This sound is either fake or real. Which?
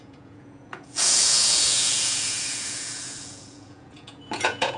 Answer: fake